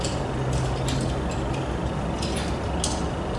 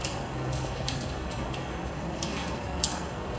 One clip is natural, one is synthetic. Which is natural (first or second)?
first